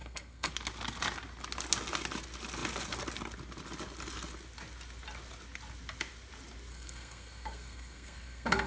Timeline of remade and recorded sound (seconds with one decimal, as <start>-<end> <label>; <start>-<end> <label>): 0.0-0.5 remade; 0.5-6.7 recorded; 6.7-8.7 remade